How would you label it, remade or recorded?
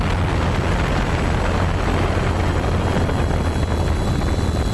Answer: recorded